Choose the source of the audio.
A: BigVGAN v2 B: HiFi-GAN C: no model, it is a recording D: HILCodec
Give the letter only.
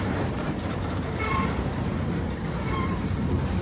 A